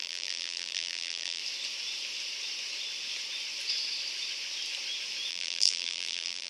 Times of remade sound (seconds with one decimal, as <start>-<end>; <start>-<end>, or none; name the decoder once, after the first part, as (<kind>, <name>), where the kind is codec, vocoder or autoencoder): 0.0-1.4 (vocoder, BigVGAN v2); 5.3-6.5